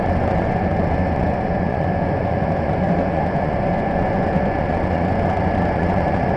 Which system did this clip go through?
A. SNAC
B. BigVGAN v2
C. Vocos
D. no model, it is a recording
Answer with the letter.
C